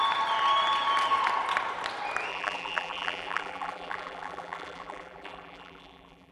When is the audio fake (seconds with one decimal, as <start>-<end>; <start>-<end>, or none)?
2.3-6.3